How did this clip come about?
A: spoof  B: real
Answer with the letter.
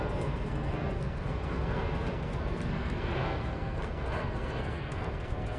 A